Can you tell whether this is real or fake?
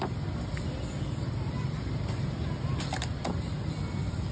real